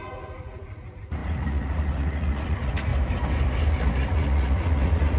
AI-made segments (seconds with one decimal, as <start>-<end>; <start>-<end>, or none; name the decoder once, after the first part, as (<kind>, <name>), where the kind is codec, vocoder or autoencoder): 0.0-2.9 (vocoder, Vocos); 3.7-5.2